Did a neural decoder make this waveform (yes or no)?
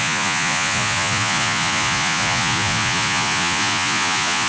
yes